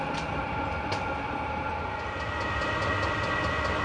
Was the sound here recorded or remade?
recorded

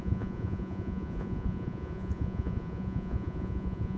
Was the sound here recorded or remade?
remade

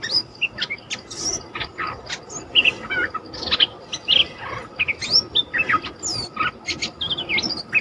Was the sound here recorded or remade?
recorded